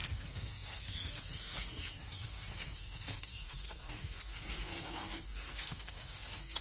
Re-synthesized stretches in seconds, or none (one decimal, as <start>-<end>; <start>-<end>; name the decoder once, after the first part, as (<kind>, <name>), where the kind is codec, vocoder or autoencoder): 0.0-6.6 (codec, SNAC)